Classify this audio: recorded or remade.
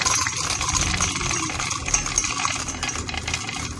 recorded